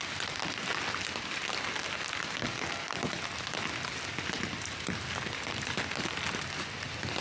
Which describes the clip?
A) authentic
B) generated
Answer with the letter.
A